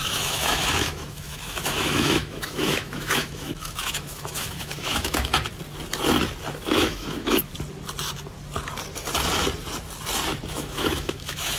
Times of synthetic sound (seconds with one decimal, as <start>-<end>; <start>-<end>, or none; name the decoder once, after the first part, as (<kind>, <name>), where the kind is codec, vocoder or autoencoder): 0.0-5.3 (autoencoder, DAC-VAE); 6.5-7.5; 10.5-11.6